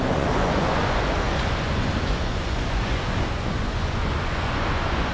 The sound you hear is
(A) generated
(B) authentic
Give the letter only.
A